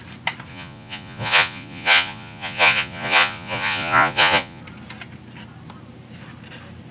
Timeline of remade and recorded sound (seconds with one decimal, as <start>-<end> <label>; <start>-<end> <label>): 0.0-0.5 recorded; 0.5-4.6 remade; 4.6-6.9 recorded